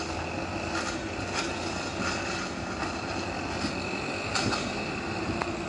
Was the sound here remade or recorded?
recorded